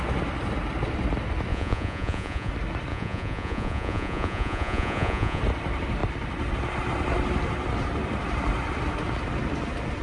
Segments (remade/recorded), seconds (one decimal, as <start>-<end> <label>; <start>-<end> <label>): 0.0-1.5 recorded; 1.5-2.5 remade; 2.5-2.9 recorded; 2.9-5.4 remade; 5.4-10.0 recorded